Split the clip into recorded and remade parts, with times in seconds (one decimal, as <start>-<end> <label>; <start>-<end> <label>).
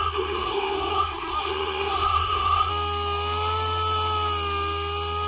0.0-2.7 remade; 2.7-5.3 recorded